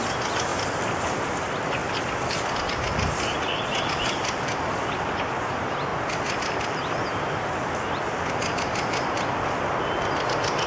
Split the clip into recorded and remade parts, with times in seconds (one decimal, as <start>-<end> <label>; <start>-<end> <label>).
0.0-0.5 recorded; 0.5-1.2 remade; 1.2-1.8 recorded; 1.8-5.3 remade; 5.3-5.9 recorded; 5.9-10.7 remade